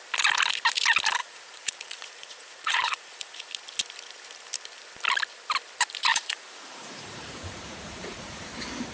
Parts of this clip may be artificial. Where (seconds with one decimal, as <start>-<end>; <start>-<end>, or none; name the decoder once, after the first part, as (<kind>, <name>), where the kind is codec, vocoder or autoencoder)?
1.2-3.5 (vocoder, Vocos); 6.1-8.5